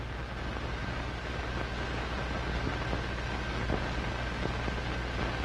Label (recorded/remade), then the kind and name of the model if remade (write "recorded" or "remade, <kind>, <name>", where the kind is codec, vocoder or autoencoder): recorded